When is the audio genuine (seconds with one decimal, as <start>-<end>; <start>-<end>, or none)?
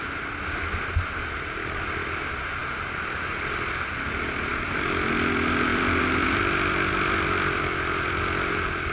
0.0-8.9